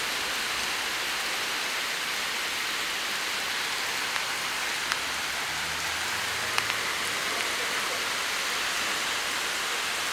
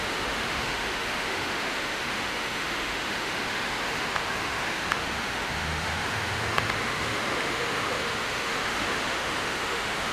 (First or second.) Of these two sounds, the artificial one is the second